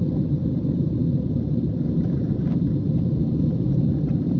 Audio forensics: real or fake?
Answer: real